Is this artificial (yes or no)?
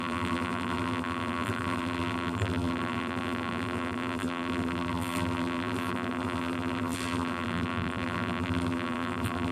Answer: yes